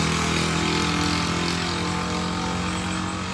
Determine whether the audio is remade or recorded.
recorded